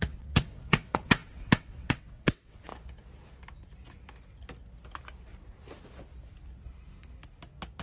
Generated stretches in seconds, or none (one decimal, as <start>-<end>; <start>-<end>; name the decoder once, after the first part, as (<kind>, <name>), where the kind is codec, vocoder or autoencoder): 0.0-2.7 (vocoder, WaveNeXt)